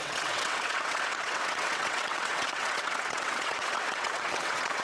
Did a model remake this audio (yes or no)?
yes